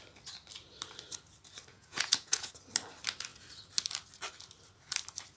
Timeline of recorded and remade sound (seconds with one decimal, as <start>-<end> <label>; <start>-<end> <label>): 0.0-1.7 recorded; 1.7-2.5 remade; 2.5-5.4 recorded

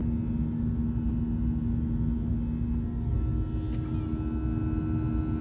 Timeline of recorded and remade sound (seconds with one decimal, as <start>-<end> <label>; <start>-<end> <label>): 0.0-5.4 recorded

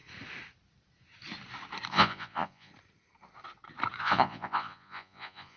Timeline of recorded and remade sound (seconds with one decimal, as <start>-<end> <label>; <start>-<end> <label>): 0.0-1.9 recorded; 1.9-2.7 remade; 2.7-4.0 recorded; 4.0-5.6 remade

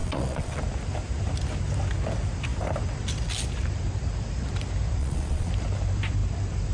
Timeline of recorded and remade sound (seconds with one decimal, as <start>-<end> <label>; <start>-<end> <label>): 0.0-0.6 remade; 0.6-5.0 recorded; 5.0-5.5 remade; 5.5-6.7 recorded

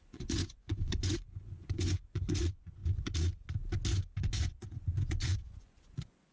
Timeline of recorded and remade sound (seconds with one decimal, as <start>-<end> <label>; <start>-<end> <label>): 0.0-2.8 remade; 2.8-4.2 recorded; 4.2-6.3 remade

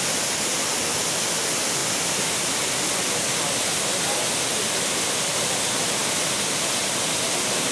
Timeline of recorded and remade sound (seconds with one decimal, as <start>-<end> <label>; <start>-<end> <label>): 0.0-7.7 recorded